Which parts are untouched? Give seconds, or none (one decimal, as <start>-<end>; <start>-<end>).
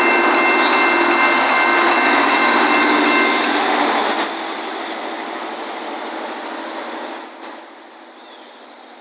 0.0-9.0